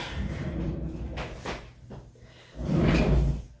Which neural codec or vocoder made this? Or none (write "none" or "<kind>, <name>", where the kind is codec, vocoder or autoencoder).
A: none